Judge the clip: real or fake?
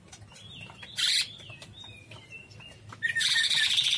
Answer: real